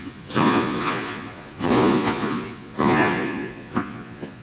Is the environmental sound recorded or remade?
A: remade